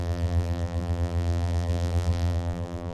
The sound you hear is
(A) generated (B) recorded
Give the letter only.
A